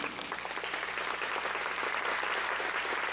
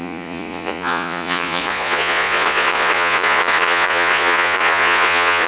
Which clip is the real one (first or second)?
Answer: first